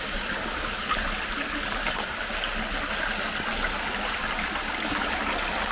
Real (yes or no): yes